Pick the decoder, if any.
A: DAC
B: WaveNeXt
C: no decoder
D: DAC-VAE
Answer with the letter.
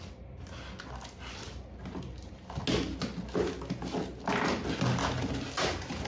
C